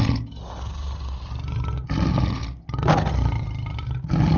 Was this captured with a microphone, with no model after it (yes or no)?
yes